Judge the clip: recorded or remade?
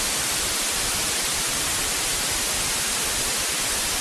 recorded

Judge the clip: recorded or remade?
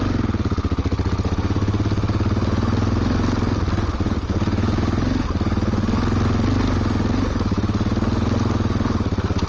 recorded